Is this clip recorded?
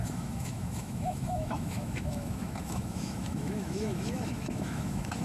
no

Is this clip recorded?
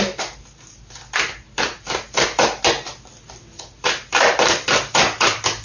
yes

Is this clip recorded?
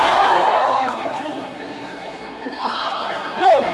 no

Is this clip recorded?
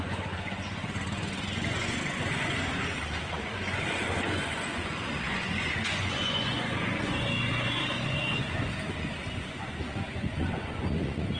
no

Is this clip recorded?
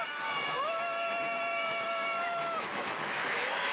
no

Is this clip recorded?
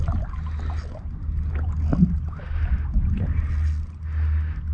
yes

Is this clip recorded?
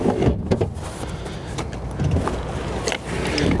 yes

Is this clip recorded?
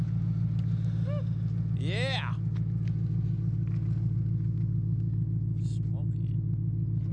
yes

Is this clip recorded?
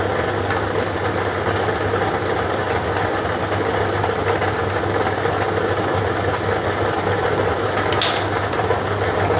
yes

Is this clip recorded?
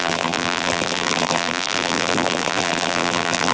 no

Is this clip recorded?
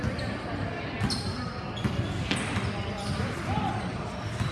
yes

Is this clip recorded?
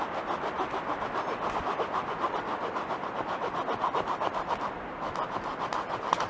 yes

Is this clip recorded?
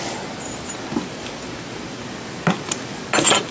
yes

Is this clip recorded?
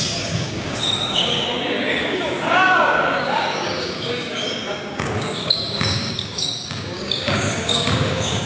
no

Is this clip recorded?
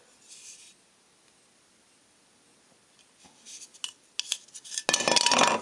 yes